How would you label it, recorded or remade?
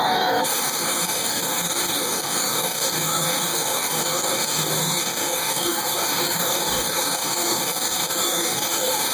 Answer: remade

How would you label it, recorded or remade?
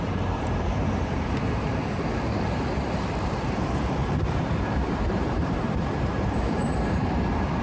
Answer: remade